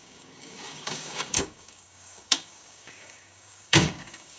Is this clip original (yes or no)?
no